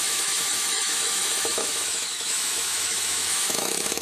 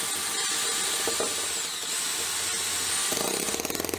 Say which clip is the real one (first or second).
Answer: second